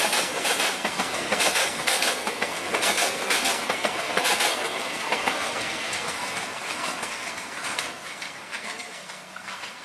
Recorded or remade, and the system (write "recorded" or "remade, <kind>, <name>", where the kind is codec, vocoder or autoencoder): remade, codec, SNAC